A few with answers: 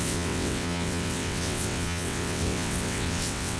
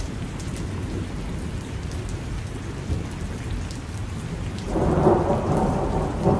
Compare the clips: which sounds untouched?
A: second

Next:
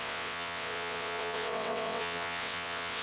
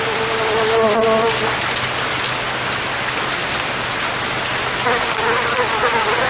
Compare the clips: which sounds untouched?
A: second